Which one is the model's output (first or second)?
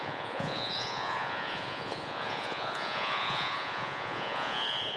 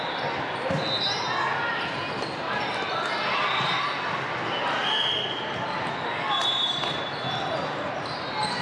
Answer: first